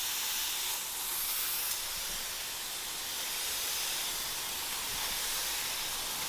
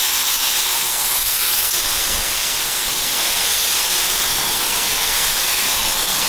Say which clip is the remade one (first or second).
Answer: second